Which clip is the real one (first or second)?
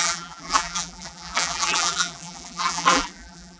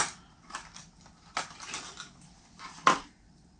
second